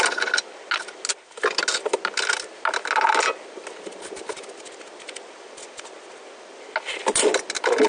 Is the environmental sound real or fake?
real